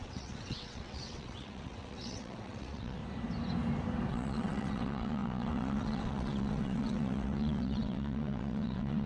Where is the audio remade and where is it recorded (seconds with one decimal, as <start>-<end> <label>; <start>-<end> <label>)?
0.0-3.0 remade; 3.0-4.1 recorded; 4.1-9.1 remade